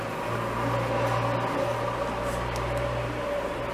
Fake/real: real